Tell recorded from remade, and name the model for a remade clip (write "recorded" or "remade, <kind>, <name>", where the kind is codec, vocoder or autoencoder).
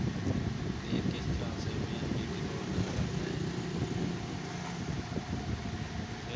recorded